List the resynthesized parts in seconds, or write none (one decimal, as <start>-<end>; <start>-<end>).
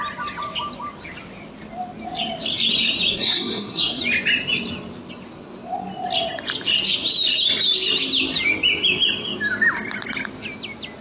3.1-4.0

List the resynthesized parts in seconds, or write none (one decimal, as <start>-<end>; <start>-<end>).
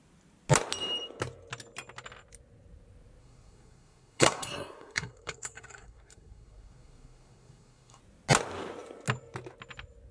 3.2-8.0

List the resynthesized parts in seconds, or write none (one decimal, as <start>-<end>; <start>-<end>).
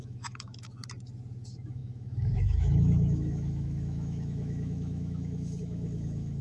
0.0-0.8; 1.4-6.4